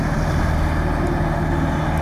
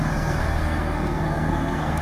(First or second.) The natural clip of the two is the first